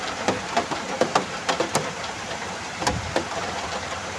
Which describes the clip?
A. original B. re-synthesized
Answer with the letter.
B